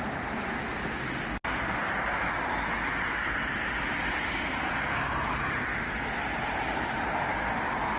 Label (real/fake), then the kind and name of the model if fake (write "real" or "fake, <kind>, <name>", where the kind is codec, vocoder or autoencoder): real